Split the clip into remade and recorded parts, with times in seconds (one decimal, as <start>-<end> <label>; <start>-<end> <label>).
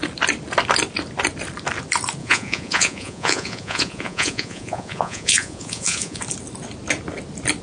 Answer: 0.0-2.2 recorded; 2.2-6.2 remade; 6.2-7.6 recorded